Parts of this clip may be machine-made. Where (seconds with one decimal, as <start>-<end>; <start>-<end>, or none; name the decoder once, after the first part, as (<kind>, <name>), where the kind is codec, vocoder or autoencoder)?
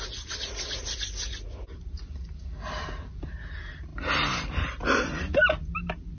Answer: none